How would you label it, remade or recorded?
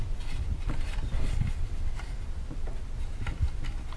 recorded